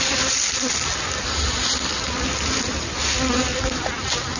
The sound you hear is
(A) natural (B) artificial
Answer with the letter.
A